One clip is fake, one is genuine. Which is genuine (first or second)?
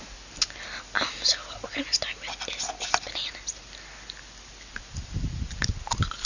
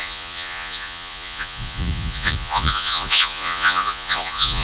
first